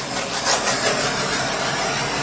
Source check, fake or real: real